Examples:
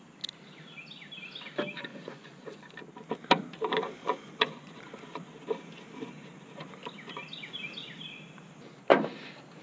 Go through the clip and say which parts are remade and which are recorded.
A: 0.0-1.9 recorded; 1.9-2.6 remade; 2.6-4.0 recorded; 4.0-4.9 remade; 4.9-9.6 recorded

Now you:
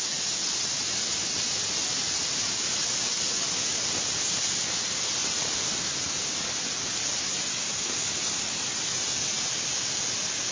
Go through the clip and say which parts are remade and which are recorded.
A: 0.0-10.5 recorded

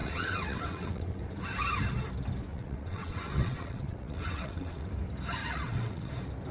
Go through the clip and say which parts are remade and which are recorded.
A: 0.0-1.2 remade; 1.2-2.5 recorded; 2.5-4.9 remade; 4.9-5.4 recorded; 5.4-6.1 remade; 6.1-6.5 recorded

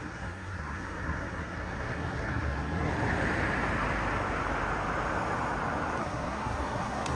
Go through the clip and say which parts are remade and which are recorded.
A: 0.0-2.9 remade; 2.9-6.0 recorded; 6.0-7.2 remade

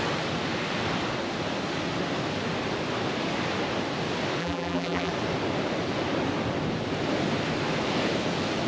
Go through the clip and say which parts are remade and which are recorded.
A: 0.0-4.4 recorded; 4.4-5.1 remade; 5.1-8.7 recorded